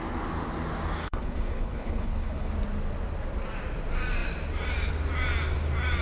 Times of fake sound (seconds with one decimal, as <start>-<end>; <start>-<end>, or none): 1.0-2.5